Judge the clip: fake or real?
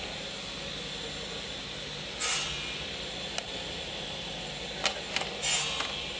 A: real